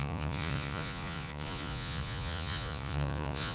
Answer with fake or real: fake